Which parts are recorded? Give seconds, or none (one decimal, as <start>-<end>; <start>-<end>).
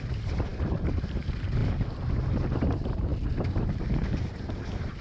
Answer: 0.0-5.0